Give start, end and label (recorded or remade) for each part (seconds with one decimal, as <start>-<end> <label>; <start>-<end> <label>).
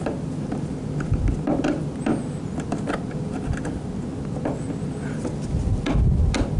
0.0-6.6 recorded